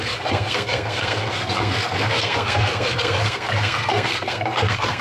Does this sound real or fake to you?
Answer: fake